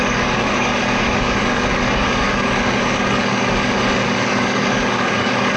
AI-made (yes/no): yes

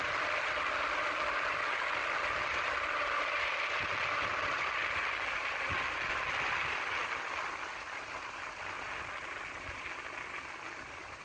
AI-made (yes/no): no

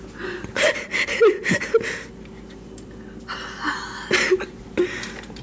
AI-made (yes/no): no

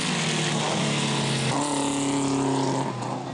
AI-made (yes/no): no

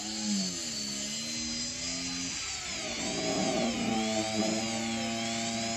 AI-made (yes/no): no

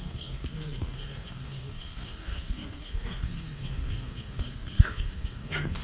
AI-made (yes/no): yes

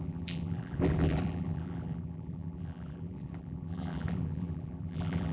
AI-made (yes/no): yes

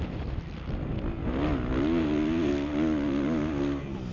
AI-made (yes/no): no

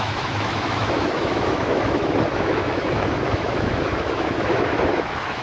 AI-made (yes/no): yes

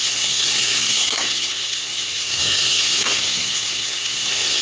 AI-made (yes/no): yes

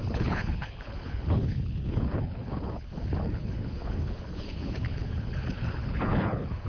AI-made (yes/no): yes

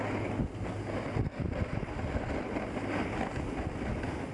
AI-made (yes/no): no